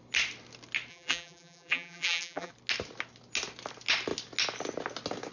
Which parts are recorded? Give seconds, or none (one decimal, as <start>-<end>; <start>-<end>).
0.0-0.9; 2.5-5.3